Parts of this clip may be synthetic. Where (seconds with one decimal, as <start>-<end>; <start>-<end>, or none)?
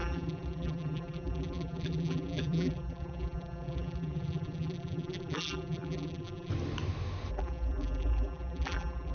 0.0-6.5; 7.3-9.1